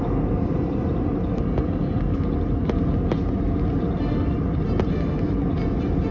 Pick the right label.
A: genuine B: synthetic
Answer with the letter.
A